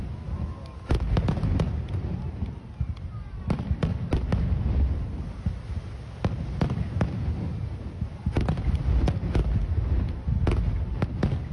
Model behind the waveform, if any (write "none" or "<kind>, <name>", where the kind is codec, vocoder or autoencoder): none